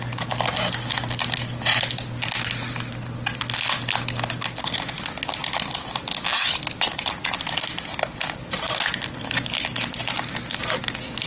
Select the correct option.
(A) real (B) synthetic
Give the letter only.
A